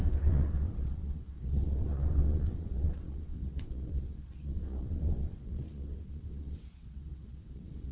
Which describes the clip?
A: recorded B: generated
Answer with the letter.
B